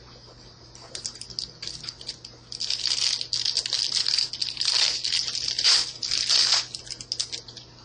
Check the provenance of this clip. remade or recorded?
recorded